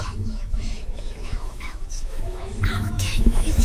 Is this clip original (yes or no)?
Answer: no